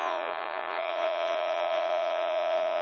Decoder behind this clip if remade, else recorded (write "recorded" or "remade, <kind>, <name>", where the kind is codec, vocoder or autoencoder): remade, vocoder, Vocos